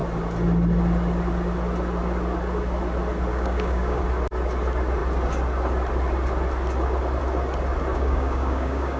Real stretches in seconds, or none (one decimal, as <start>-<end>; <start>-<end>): 0.0-3.3; 4.0-7.9